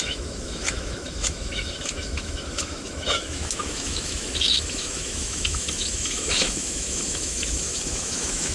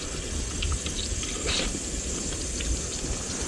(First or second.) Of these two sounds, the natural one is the second